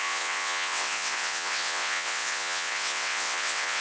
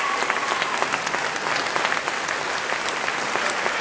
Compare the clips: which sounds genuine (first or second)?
second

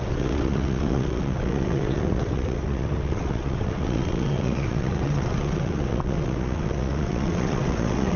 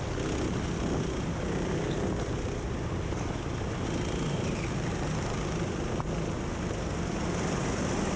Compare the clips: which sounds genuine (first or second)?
second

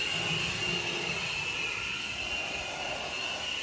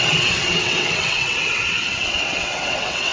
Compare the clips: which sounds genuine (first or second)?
first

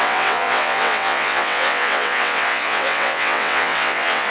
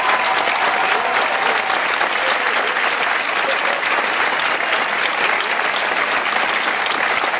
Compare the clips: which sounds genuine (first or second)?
second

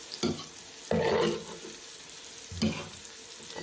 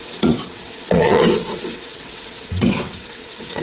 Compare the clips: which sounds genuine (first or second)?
first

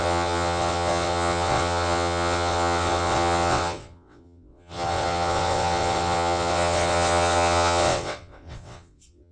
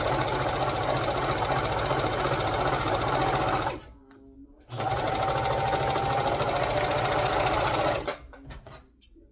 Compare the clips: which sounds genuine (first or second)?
second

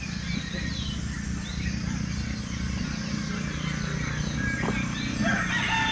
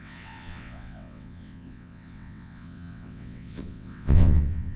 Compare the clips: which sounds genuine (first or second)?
first